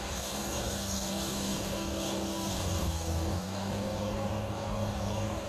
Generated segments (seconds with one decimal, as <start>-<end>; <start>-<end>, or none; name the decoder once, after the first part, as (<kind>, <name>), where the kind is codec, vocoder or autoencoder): 0.0-5.5 (codec, DAC)